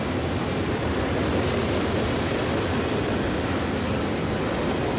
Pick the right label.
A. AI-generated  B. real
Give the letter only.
B